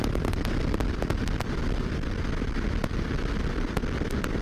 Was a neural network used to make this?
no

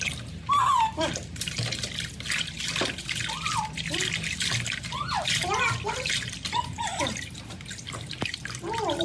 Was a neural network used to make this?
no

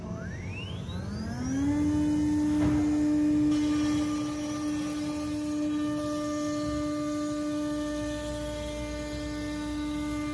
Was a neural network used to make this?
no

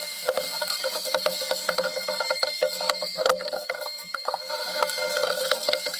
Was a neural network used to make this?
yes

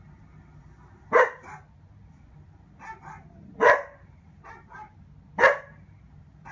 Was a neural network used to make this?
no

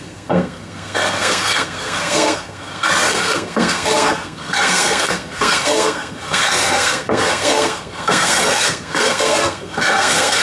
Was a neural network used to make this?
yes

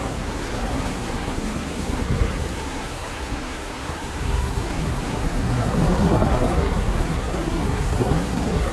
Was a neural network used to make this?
yes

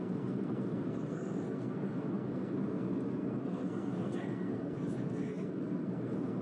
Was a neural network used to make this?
yes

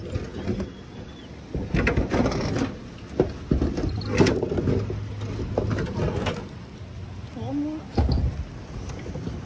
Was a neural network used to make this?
no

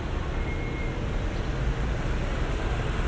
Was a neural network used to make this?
no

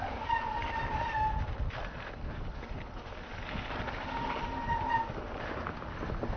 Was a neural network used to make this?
no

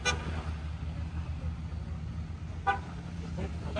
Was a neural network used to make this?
no